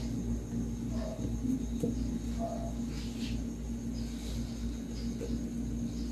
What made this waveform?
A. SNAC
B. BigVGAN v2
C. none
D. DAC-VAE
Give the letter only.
C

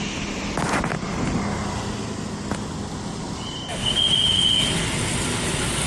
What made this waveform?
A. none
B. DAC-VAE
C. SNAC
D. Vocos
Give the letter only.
A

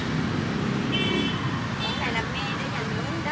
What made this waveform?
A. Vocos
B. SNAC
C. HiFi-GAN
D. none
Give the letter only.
D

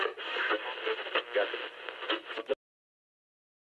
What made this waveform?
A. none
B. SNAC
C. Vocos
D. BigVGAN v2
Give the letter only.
A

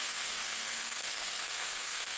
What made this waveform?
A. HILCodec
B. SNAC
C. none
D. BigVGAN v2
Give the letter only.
B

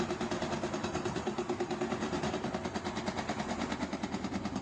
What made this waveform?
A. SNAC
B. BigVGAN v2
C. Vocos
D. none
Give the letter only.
D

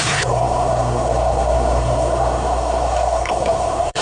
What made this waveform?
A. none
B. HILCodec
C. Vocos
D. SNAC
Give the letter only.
D